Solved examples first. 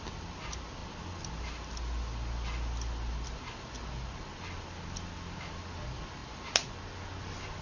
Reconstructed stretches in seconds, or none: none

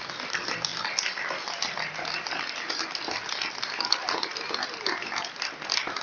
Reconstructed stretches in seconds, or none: none

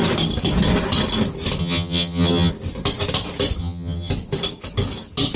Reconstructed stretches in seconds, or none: 1.6-2.5 (vocoder, HiFi-GAN); 3.6-4.1

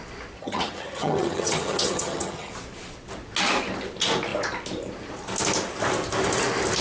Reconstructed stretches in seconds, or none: 0.4-2.5 (vocoder, HiFi-GAN)